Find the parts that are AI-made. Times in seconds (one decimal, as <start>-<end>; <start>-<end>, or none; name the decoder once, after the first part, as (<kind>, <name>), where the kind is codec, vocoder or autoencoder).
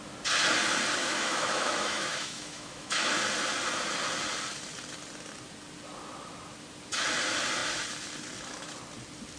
1.0-3.1 (autoencoder, DAC-VAE)